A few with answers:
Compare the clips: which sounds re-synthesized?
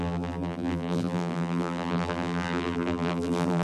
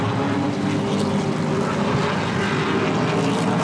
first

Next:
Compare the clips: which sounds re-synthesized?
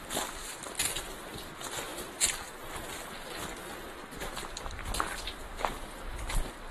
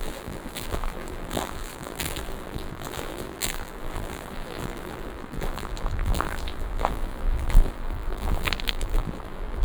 second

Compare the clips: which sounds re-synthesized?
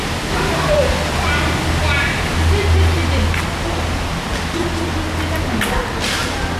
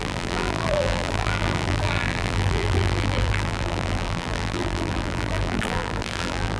second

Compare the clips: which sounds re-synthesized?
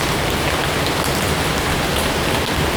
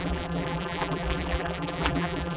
second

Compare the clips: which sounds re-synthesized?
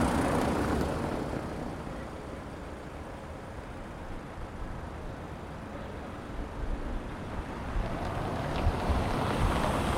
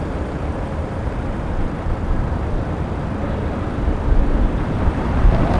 second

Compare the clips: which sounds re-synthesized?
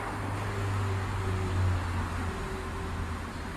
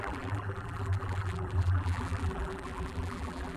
second